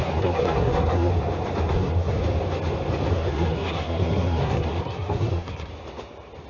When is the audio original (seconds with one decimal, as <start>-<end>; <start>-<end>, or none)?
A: 1.1-1.7; 2.2-3.1; 5.7-6.5